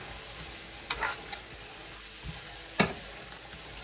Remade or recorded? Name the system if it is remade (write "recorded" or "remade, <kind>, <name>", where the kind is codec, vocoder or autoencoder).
recorded